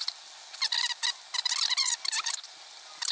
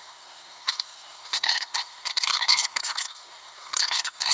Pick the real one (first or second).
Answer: first